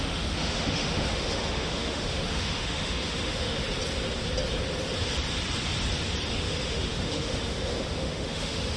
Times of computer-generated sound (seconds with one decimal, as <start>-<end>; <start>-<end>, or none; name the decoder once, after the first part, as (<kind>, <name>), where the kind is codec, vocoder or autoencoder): 0.0-3.6 (autoencoder, DAC-VAE); 6.3-8.8